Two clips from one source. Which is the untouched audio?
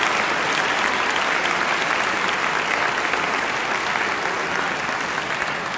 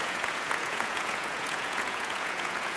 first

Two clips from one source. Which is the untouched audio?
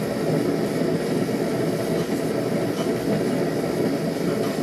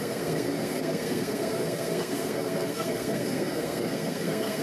first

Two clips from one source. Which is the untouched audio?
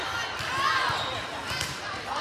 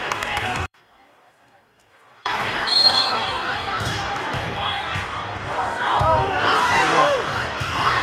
first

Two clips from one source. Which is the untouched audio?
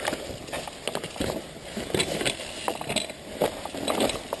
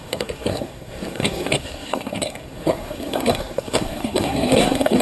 first